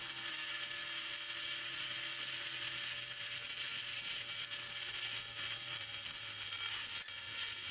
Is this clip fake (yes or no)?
no